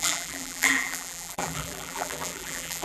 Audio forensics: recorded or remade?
remade